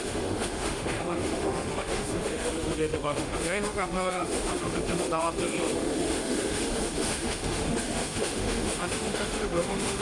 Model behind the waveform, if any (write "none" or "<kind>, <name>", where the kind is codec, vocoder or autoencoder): autoencoder, DAC-VAE